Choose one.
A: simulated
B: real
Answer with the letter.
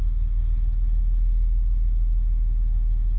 B